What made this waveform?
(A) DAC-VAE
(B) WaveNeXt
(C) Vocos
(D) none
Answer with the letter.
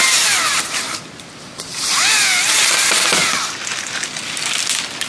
D